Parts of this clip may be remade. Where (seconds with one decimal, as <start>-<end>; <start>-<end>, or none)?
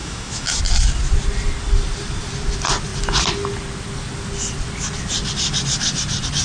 0.0-0.6